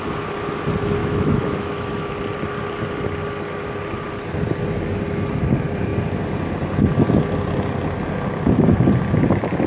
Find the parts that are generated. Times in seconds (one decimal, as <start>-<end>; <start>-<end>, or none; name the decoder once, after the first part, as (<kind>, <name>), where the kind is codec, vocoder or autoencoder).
1.0-2.1 (autoencoder, DAC-VAE)